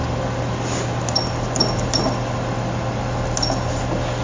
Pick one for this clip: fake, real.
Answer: real